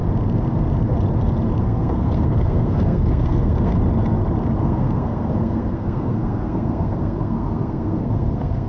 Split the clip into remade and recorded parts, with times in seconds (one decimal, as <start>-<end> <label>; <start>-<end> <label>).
0.0-1.6 recorded; 1.6-3.7 remade; 3.7-4.6 recorded; 4.6-8.7 remade